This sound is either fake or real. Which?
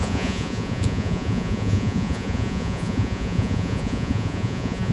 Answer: fake